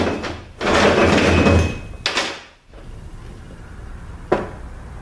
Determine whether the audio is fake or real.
real